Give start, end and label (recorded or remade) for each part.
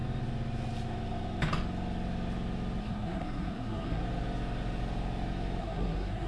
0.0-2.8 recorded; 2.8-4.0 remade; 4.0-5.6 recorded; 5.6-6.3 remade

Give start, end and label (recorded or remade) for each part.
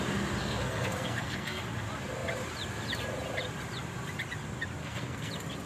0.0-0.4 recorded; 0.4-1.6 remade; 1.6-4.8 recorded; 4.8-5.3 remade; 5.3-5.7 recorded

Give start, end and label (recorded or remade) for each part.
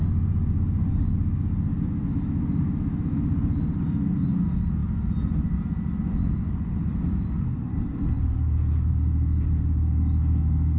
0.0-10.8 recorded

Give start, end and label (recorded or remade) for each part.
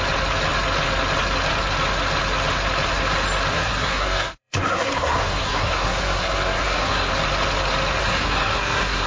0.0-3.5 recorded; 3.5-7.1 remade; 7.1-8.0 recorded; 8.0-9.1 remade